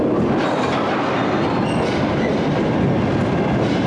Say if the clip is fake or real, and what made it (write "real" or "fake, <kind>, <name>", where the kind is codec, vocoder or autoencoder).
real